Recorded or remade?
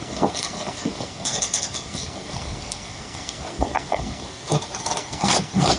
remade